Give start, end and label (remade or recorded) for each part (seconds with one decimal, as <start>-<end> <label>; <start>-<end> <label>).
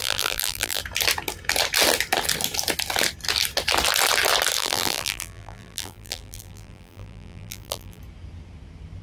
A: 0.0-0.8 remade; 0.8-4.6 recorded; 4.6-8.0 remade; 8.0-9.0 recorded